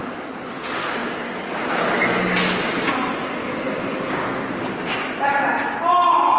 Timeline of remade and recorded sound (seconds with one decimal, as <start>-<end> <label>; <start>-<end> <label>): 0.0-6.4 recorded